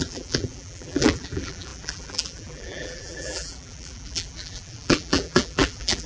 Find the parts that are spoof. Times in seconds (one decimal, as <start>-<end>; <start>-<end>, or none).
0.0-6.1